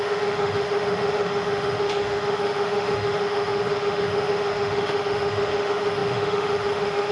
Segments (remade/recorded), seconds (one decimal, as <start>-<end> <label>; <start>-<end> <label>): 0.0-7.1 remade